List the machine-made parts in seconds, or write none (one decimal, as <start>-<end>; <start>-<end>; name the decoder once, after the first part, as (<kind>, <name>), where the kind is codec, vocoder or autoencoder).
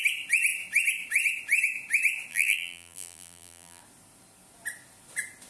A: 2.3-3.8 (vocoder, BigVGAN v2)